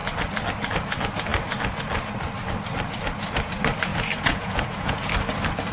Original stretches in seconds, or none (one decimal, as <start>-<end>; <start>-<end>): 0.0-3.9; 5.1-5.7